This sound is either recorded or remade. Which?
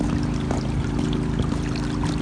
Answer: recorded